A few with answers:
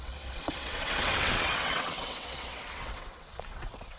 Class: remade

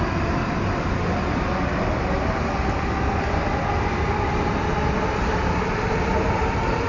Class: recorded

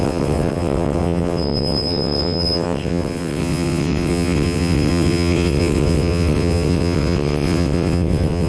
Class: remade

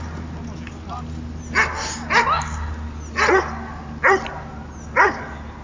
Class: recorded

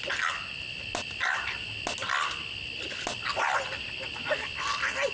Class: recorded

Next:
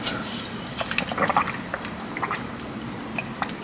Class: recorded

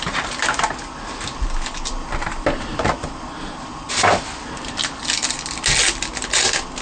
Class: recorded